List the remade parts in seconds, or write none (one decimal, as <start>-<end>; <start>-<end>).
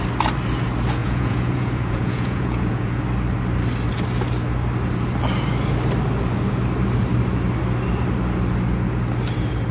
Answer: 1.0-3.0